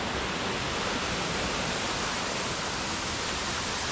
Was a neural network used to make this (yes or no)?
no